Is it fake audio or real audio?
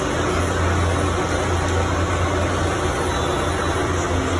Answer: real